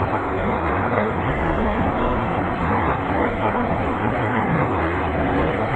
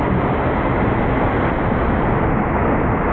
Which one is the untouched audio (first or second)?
second